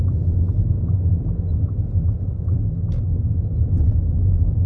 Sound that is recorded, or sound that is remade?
recorded